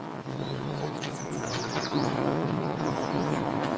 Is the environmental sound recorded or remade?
remade